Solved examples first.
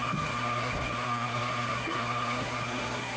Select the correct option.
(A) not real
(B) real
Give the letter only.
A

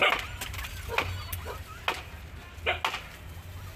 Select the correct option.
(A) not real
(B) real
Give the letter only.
B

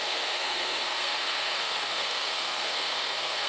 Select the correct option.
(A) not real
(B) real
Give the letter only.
A